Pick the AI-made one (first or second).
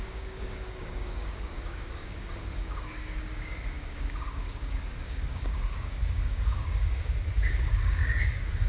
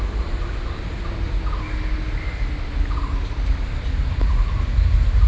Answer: first